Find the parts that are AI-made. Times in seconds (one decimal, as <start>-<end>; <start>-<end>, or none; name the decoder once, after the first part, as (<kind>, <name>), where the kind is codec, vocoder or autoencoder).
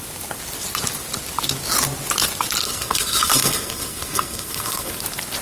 2.6-5.0 (codec, SNAC)